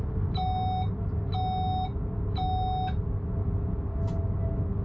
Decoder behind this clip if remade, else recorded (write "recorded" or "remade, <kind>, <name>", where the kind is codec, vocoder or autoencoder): recorded